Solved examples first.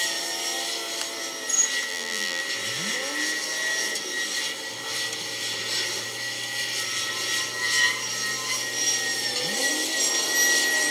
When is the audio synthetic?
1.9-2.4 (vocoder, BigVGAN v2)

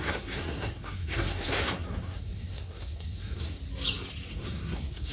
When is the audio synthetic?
0.0-3.6 (codec, SNAC); 4.3-5.1

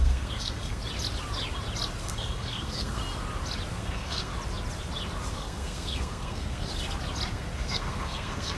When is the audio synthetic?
0.0-0.8 (codec, SNAC); 2.0-3.0; 3.7-4.3; 5.3-6.7; 7.3-8.6

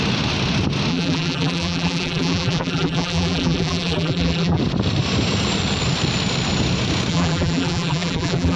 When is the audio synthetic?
0.9-4.6 (vocoder, BigVGAN v2); 7.1-8.6

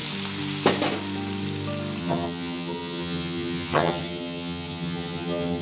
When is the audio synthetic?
2.0-5.6 (vocoder, HiFi-GAN)

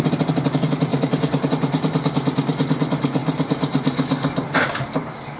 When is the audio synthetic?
0.9-1.5 (vocoder, BigVGAN v2)

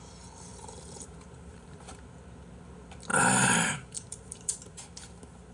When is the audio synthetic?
0.5-2.0 (vocoder, BigVGAN v2); 3.1-4.8

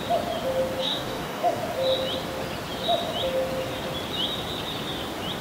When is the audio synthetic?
0.8-1.6 (codec, DAC)